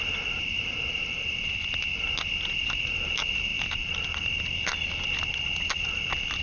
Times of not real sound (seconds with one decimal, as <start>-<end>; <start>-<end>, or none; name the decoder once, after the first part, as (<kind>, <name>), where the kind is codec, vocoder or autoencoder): none

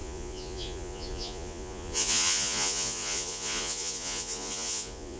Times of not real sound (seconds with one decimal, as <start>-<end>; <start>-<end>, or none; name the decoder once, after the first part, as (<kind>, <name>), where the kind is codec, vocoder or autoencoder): 0.0-5.2 (vocoder, Vocos)

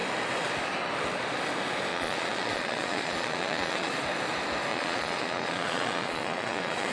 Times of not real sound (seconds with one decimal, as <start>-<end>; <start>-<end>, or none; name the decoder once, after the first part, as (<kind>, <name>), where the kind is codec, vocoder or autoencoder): 1.9-3.9 (vocoder, Vocos); 4.7-6.9

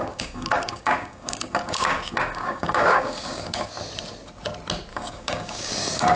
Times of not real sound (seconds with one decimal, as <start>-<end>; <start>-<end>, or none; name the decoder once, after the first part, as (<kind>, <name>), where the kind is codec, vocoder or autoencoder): 0.0-3.7 (codec, DAC); 4.9-6.2

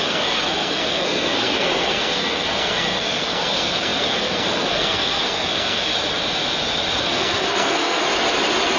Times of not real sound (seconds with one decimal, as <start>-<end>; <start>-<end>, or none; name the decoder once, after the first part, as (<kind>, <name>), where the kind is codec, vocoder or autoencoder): 0.0-5.9 (codec, SNAC); 7.0-8.0